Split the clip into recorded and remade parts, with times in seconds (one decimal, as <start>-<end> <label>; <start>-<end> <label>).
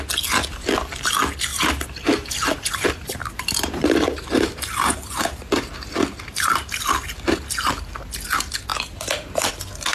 0.0-1.5 recorded; 1.5-5.1 remade; 5.1-9.9 recorded